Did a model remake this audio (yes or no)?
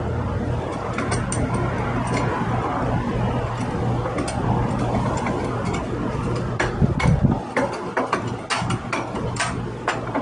no